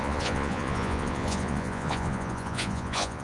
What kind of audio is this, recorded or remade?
remade